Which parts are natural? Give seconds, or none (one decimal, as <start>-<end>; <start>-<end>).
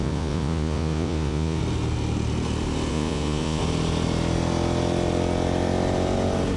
1.6-2.9; 3.6-6.6